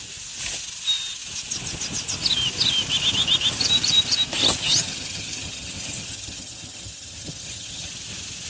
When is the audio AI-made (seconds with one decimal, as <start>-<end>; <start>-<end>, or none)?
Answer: 4.6-7.9